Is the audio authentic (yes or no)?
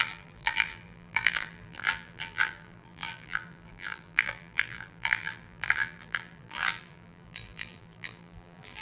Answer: no